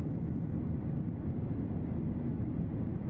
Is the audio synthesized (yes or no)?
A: no